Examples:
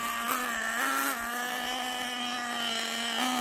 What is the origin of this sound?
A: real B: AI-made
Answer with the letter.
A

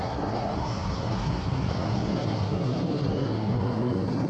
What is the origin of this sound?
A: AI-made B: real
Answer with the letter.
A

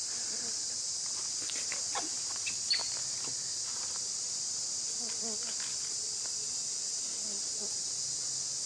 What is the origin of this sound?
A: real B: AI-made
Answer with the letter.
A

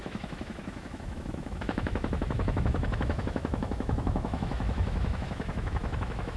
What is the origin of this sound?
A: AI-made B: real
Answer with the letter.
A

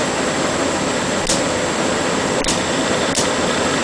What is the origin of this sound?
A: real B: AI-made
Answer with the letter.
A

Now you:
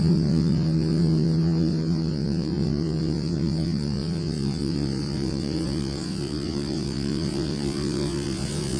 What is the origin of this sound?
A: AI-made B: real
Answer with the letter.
A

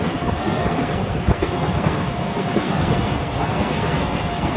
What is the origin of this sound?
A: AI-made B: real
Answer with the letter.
A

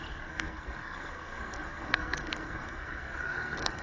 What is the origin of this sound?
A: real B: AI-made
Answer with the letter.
B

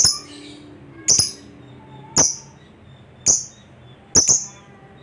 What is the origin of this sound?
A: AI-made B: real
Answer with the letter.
B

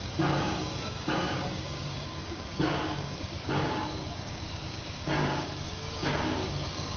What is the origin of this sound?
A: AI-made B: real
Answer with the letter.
A